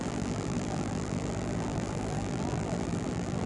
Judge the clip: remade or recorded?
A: remade